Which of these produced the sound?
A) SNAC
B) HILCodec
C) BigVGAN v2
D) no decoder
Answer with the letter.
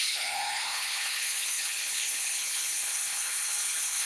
B